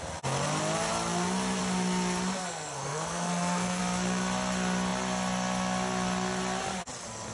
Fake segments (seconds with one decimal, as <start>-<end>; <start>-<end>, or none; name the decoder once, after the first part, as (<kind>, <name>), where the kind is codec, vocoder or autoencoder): 2.4-3.8 (codec, SNAC)